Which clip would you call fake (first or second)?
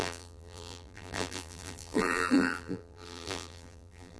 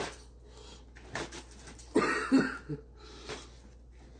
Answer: first